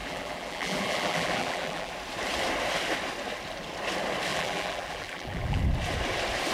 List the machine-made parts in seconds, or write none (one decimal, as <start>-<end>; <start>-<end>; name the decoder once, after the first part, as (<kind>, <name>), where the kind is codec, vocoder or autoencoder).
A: 0.0-1.9 (vocoder, BigVGAN v2); 4.3-5.6